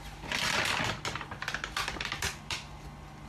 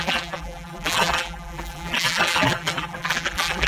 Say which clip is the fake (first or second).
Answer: second